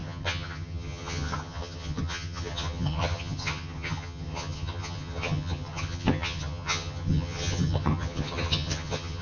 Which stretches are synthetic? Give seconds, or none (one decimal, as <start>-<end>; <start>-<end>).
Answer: 0.0-9.2

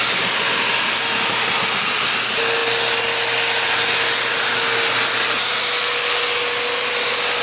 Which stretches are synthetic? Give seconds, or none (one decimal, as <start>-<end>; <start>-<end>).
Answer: none